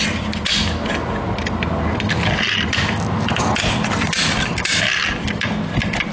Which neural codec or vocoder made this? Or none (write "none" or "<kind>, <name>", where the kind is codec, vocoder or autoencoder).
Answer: none